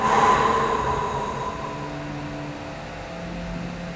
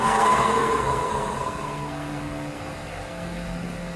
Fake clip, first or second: second